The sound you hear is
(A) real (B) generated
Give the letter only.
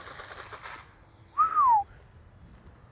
A